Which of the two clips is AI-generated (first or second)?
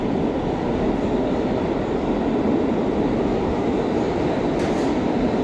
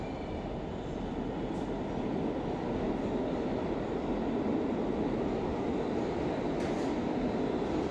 first